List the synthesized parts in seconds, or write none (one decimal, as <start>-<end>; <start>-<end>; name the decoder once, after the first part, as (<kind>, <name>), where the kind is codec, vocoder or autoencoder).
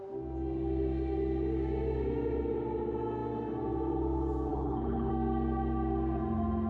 4.5-5.1 (codec, HILCodec)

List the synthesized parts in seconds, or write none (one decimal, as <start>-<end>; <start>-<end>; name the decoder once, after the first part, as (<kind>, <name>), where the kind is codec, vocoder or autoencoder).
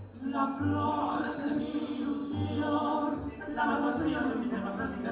1.0-1.6 (codec, HILCodec)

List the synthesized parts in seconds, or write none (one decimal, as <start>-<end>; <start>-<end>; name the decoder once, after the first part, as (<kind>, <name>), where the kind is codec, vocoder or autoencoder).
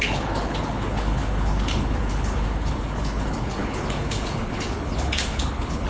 0.0-5.9 (codec, HILCodec)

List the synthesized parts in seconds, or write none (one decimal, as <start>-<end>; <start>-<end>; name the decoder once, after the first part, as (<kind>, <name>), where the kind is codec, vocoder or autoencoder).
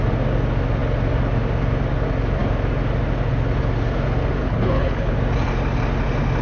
4.4-5.1 (codec, HILCodec)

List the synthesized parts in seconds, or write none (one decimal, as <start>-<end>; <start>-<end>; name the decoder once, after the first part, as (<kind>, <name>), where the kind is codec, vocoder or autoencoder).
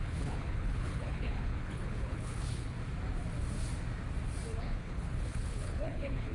0.0-2.8 (codec, HILCodec); 4.6-6.3